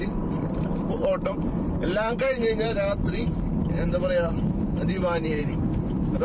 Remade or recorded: remade